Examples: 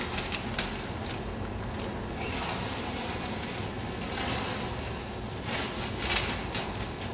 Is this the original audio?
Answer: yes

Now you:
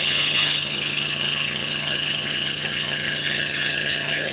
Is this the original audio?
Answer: no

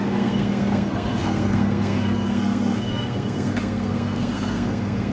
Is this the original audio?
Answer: no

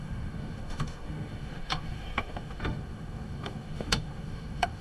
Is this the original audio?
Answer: no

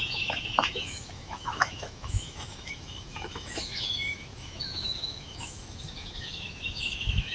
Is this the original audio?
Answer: no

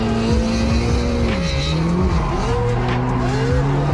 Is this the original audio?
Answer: yes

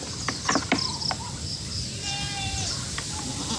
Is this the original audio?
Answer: no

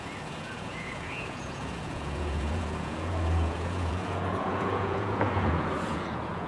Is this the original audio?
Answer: no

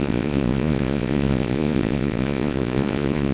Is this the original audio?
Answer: no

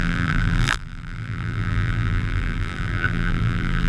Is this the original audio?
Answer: no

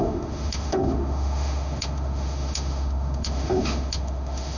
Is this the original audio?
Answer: no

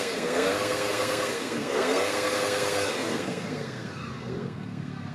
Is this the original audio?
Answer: no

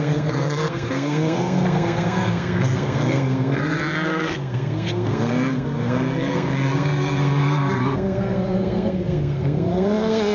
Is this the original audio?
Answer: no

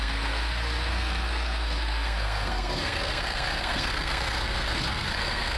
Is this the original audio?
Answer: no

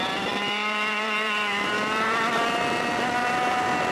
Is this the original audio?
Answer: no